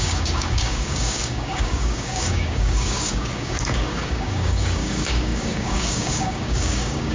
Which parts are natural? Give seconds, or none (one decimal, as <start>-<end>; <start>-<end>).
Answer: none